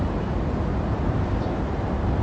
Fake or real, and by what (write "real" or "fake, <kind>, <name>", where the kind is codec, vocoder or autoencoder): real